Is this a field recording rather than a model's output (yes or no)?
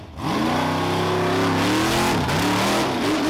yes